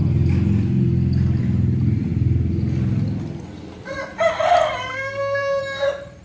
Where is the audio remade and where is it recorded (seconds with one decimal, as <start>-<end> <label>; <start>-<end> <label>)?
0.0-4.9 recorded; 4.9-5.6 remade; 5.6-6.2 recorded